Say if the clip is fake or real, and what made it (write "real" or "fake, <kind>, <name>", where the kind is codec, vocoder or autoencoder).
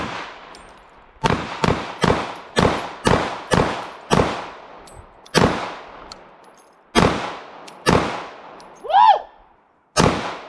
real